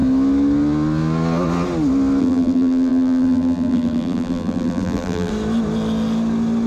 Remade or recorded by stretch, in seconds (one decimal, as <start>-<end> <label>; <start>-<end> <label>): 0.0-2.2 recorded; 2.2-5.3 remade; 5.3-6.7 recorded